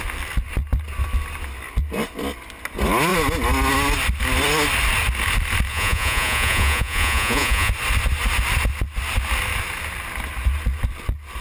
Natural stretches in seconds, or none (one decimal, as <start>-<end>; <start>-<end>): 0.0-5.7; 7.7-11.4